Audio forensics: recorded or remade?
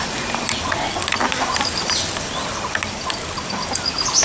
recorded